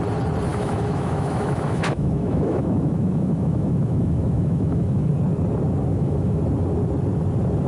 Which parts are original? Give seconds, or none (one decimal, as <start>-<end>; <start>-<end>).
0.0-0.5; 5.1-5.9; 6.4-7.7